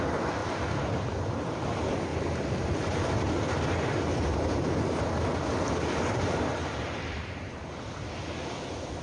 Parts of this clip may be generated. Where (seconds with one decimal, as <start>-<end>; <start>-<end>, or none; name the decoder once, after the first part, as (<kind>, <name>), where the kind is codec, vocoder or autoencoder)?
0.4-1.2 (vocoder, BigVGAN v2); 2.1-5.0; 6.6-7.6